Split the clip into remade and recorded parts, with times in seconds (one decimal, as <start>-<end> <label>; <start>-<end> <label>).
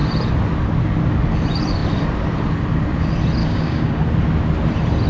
0.0-3.4 recorded; 3.4-4.0 remade; 4.0-5.1 recorded